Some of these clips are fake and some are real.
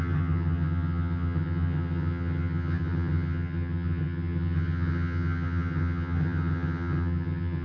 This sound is fake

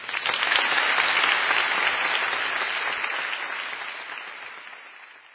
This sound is real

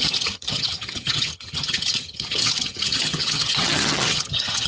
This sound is fake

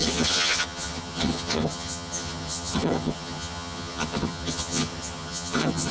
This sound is fake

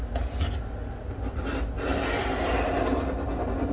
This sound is real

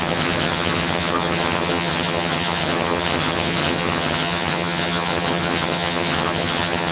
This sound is fake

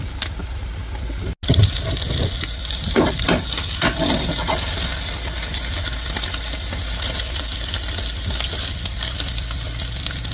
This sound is real